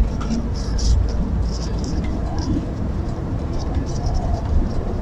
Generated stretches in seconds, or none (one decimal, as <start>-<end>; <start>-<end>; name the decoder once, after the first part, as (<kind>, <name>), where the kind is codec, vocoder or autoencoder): 1.7-5.0 (vocoder, BigVGAN v2)